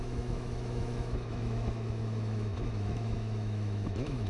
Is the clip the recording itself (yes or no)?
no